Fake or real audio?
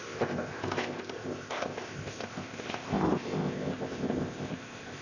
fake